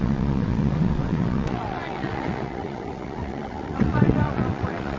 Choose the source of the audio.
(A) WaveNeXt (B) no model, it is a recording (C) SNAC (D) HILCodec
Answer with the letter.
A